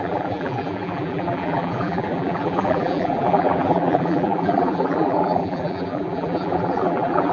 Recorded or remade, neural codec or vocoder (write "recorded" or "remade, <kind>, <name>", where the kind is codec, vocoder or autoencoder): remade, vocoder, BigVGAN v2